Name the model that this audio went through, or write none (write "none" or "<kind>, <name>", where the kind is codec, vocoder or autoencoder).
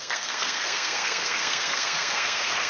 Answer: codec, SNAC